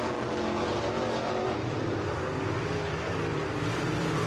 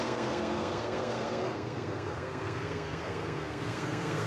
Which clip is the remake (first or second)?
second